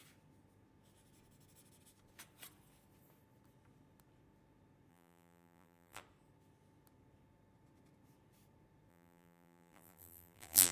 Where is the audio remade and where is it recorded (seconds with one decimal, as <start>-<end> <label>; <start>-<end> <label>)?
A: 0.0-4.9 recorded; 4.9-6.0 remade; 6.0-8.9 recorded; 8.9-10.7 remade

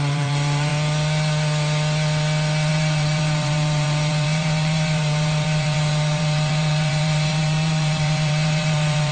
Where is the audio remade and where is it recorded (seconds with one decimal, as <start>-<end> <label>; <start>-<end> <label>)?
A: 0.0-0.7 remade; 0.7-2.7 recorded; 2.7-9.1 remade

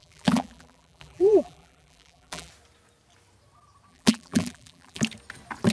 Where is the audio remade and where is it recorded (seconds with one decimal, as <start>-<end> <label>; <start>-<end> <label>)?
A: 0.0-2.5 remade; 2.5-3.9 recorded; 3.9-5.0 remade; 5.0-5.7 recorded